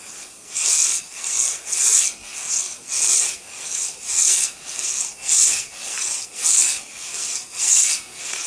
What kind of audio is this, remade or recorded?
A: remade